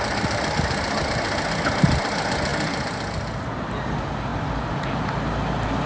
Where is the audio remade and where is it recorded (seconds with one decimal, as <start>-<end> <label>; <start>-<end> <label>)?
0.0-4.3 recorded; 4.3-4.9 remade; 4.9-5.9 recorded